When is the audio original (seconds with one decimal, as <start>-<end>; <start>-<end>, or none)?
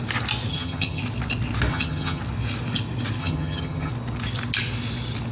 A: 0.0-0.5; 1.0-1.7; 2.2-3.2; 3.9-5.3